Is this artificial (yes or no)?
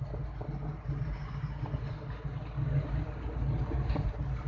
no